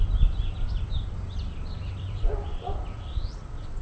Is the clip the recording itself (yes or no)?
no